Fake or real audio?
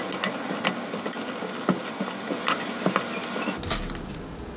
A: real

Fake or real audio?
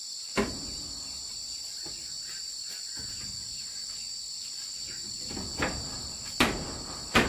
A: real